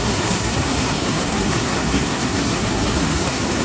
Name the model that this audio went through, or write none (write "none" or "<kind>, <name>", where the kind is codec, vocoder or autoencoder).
codec, SNAC